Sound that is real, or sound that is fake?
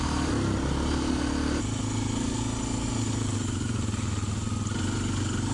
real